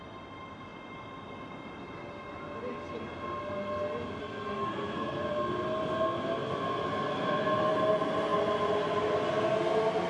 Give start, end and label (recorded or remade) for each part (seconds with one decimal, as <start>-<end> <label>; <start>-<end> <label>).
0.0-4.2 recorded; 4.2-5.2 remade; 5.2-10.1 recorded